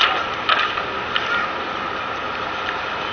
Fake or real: real